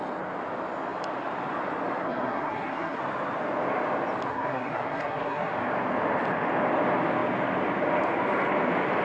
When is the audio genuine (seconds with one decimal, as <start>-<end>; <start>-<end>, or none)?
0.0-2.0; 3.0-4.3; 5.5-9.0